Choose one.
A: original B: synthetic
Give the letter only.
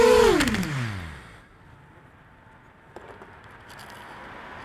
A